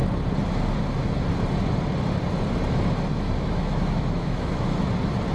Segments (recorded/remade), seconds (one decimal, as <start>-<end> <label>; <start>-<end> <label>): 0.0-3.1 recorded; 3.1-4.8 remade; 4.8-5.3 recorded

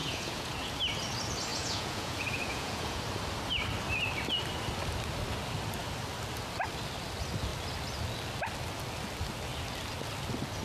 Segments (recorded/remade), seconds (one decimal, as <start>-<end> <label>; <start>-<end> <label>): 0.0-0.7 remade; 0.7-1.5 recorded; 1.5-3.0 remade; 3.0-10.6 recorded

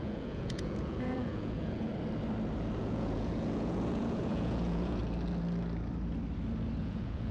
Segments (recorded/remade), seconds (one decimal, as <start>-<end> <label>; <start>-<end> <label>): 0.0-1.9 remade; 1.9-2.8 recorded; 2.8-5.0 remade; 5.0-6.8 recorded; 6.8-7.3 remade

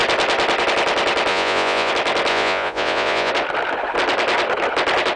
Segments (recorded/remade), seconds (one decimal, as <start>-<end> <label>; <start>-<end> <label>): 0.0-1.3 recorded; 1.3-1.9 remade; 1.9-2.3 recorded; 2.3-3.3 remade; 3.3-5.2 recorded